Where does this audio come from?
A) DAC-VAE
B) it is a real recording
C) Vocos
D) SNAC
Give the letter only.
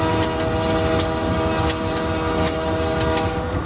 B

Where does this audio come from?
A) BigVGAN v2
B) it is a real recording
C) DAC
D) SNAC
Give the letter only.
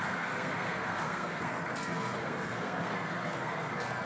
D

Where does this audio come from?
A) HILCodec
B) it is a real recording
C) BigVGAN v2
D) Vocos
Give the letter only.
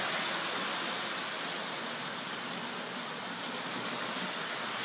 C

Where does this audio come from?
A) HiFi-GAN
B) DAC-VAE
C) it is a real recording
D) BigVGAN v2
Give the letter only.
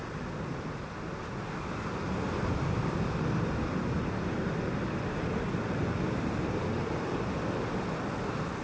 C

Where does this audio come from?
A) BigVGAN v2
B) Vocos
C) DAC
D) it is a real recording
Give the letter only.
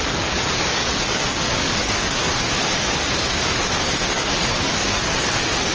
C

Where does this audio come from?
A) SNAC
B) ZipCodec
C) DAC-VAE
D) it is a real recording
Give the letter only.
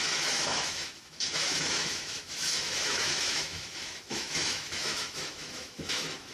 C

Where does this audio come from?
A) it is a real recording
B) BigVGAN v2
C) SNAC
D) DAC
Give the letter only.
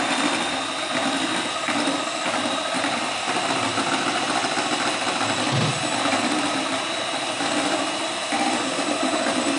B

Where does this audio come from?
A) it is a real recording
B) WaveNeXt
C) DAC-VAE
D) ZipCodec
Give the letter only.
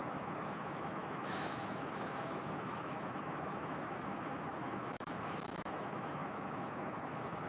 C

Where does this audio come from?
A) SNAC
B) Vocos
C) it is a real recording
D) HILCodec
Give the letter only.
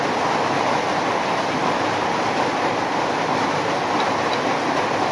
C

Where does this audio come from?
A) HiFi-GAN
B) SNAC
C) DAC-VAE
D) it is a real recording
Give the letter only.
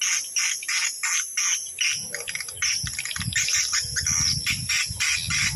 D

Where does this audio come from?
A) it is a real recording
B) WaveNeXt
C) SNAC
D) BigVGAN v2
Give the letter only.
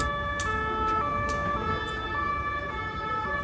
A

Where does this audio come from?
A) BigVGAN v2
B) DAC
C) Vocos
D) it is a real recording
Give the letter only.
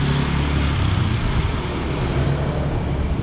D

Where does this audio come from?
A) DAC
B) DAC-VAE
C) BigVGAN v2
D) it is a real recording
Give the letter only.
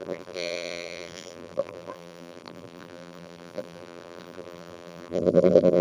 C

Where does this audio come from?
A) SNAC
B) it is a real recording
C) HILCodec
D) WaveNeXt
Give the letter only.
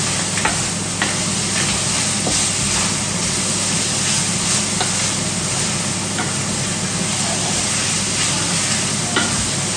B